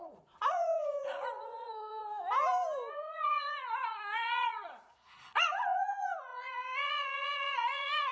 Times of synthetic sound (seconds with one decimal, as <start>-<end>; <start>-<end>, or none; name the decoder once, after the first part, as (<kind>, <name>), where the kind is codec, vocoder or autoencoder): 0.0-2.0 (vocoder, Vocos); 2.9-8.1